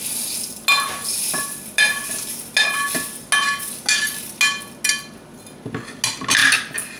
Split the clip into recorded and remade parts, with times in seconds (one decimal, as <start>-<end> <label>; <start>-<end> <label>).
0.0-7.0 recorded